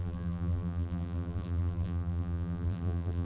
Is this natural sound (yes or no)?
no